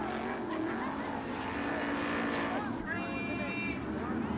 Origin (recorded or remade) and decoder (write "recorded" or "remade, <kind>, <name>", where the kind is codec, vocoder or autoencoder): recorded